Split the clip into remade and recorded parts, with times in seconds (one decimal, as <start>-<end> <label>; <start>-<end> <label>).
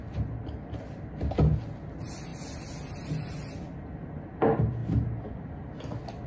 0.0-6.3 recorded